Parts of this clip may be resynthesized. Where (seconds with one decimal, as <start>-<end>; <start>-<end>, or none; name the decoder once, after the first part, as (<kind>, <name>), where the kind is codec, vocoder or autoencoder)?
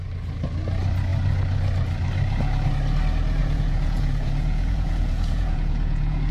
3.4-6.3 (vocoder, Vocos)